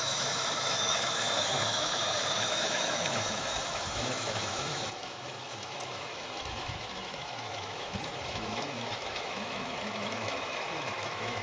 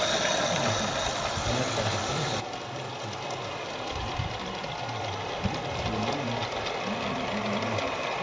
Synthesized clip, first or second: first